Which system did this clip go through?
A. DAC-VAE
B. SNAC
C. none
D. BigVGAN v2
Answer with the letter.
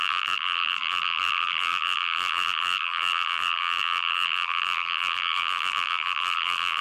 D